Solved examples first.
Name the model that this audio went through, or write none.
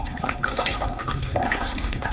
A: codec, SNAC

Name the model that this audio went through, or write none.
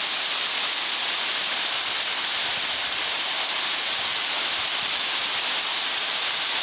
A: none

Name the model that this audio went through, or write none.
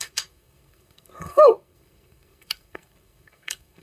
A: codec, SNAC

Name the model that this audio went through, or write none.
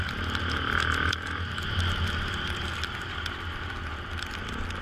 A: none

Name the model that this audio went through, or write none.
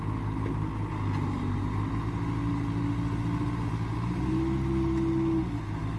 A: none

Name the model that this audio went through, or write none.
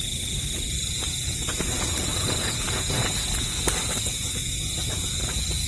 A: vocoder, Vocos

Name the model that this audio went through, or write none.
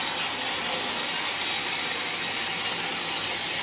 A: none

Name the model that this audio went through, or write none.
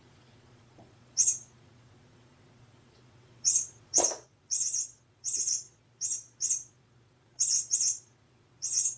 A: vocoder, Vocos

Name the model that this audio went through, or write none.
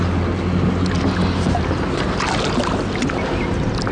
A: none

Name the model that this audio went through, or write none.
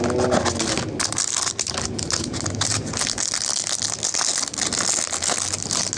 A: none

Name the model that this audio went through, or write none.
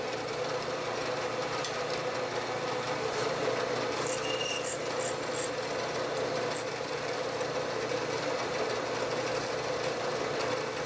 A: none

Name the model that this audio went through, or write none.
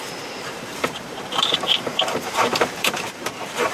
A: vocoder, BigVGAN v2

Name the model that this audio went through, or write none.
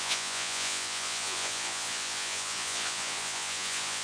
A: vocoder, Vocos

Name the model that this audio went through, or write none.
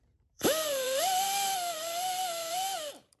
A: vocoder, BigVGAN v2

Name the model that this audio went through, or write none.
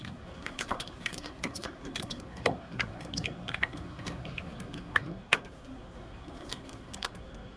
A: codec, SNAC